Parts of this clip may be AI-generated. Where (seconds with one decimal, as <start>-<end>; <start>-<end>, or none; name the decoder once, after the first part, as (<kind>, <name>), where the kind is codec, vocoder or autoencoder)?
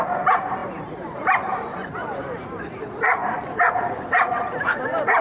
0.0-5.2 (vocoder, BigVGAN v2)